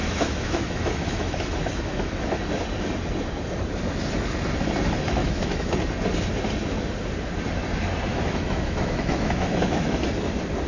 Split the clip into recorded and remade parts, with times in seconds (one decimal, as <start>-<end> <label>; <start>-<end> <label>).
0.0-2.4 remade; 2.4-5.2 recorded; 5.2-5.7 remade; 5.7-8.1 recorded; 8.1-10.0 remade; 10.0-10.7 recorded